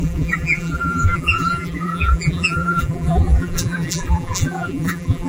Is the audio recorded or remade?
remade